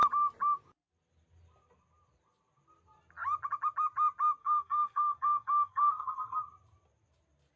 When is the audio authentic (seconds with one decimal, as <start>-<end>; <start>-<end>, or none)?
0.0-4.4; 6.4-7.6